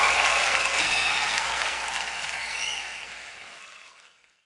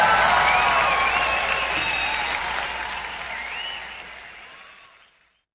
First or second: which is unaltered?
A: second